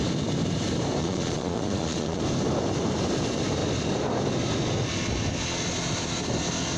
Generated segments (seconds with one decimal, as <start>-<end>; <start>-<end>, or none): 1.0-2.2